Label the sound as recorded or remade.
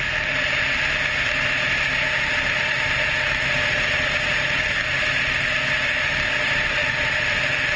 recorded